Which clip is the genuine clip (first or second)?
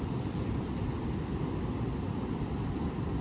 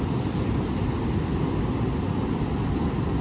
second